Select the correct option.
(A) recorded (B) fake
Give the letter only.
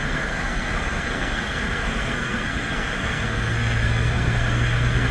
B